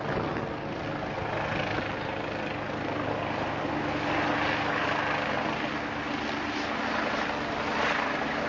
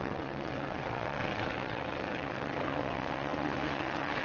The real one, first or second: first